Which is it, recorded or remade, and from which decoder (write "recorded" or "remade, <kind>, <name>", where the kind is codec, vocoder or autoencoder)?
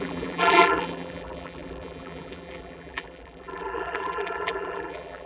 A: remade, vocoder, BigVGAN v2